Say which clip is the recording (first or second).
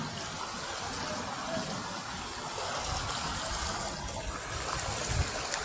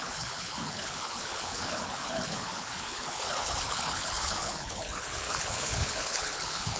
first